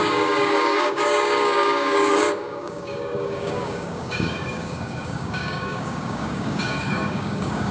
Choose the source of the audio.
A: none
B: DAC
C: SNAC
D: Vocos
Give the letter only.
B